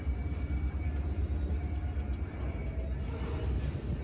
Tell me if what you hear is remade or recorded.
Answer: recorded